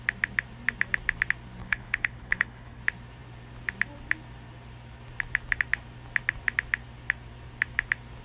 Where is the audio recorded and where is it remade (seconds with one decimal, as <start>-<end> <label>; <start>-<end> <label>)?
0.0-1.6 recorded; 1.6-2.8 remade; 2.8-8.2 recorded